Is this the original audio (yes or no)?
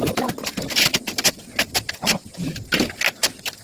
yes